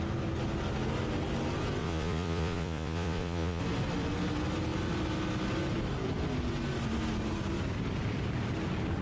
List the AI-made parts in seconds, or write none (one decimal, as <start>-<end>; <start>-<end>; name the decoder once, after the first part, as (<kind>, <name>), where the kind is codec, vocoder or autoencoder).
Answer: 1.8-3.6 (vocoder, Vocos)